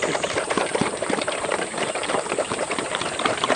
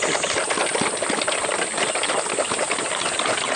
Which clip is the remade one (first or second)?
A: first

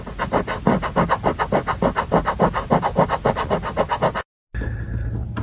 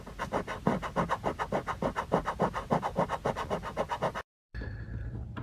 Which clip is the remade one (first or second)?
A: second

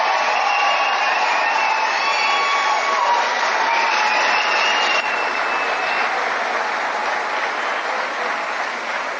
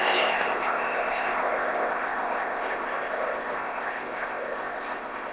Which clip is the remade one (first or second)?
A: second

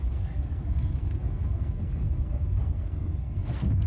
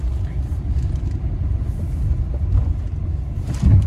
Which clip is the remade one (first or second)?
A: first